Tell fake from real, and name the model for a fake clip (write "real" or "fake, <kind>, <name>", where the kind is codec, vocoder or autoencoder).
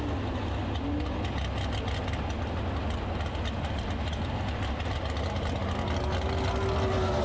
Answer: real